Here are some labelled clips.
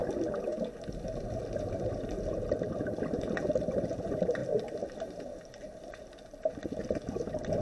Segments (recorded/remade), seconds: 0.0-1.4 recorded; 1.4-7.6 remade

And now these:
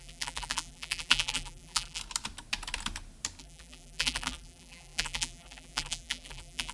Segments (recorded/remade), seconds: 0.0-2.0 remade; 2.0-3.4 recorded; 3.4-6.7 remade

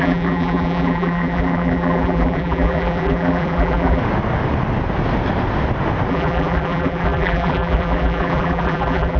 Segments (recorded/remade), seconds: 0.0-4.0 remade; 4.0-6.1 recorded; 6.1-9.2 remade

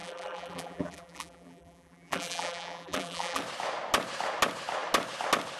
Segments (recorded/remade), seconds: 0.0-3.4 remade; 3.4-5.6 recorded

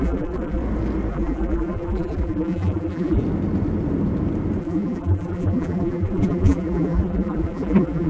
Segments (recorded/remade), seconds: 0.0-0.6 remade; 0.6-1.1 recorded; 1.1-3.2 remade; 3.2-4.6 recorded; 4.6-8.1 remade

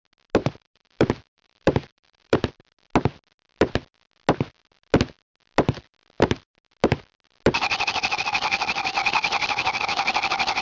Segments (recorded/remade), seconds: 0.0-0.4 recorded; 0.4-2.4 remade; 2.4-10.6 recorded

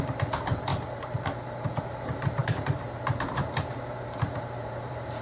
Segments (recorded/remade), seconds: 0.0-0.7 remade; 0.7-1.8 recorded; 1.8-5.2 remade